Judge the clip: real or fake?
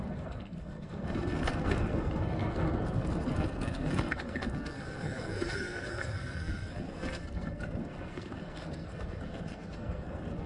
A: fake